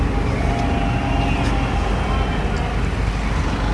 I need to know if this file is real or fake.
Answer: real